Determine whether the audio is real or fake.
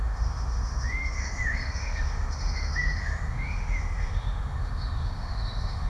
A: fake